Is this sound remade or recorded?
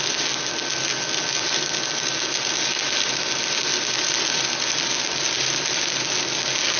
recorded